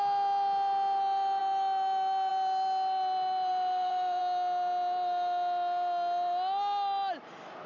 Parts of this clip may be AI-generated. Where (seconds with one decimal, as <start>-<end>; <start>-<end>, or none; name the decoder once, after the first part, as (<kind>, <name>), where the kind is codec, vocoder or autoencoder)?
3.5-4.2 (vocoder, BigVGAN v2)